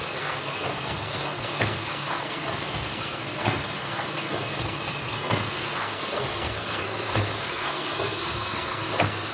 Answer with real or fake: fake